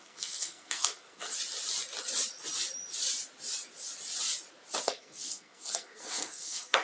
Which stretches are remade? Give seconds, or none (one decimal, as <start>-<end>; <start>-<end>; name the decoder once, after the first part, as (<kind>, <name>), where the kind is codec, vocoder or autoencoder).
0.0-1.3 (codec, SNAC); 4.8-6.8

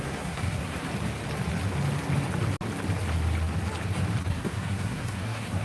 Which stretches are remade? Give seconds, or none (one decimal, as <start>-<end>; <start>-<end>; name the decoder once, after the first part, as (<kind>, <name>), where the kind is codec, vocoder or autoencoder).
0.0-0.9 (codec, SNAC); 4.3-5.6

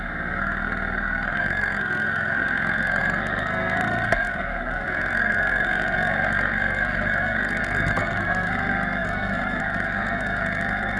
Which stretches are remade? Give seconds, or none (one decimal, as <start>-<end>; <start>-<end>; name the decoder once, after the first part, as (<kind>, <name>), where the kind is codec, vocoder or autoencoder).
0.0-11.0 (codec, SNAC)

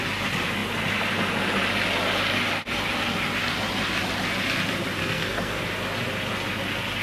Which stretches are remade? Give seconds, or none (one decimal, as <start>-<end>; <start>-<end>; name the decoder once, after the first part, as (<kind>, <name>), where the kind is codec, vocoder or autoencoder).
5.0-5.6 (codec, SNAC)

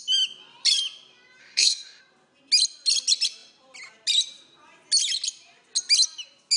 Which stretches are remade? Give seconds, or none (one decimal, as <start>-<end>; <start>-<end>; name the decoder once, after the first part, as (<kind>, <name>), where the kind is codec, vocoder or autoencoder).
1.4-2.0 (codec, SNAC)

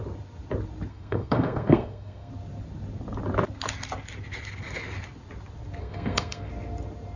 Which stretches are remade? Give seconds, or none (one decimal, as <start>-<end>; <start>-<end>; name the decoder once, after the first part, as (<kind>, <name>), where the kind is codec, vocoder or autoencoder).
0.9-2.3 (codec, SNAC); 5.8-6.5